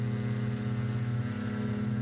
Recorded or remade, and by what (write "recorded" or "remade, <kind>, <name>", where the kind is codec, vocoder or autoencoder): recorded